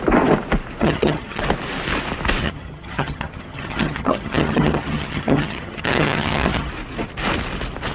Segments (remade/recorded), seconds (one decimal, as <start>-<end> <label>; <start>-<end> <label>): 0.0-0.8 recorded; 0.8-1.4 remade; 1.4-2.4 recorded; 2.4-6.7 remade; 6.7-7.9 recorded